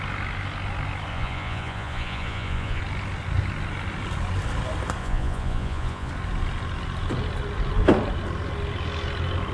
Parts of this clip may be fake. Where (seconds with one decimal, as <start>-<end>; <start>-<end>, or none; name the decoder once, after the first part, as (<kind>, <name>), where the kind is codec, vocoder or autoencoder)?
1.1-2.8 (vocoder, Vocos); 5.0-6.1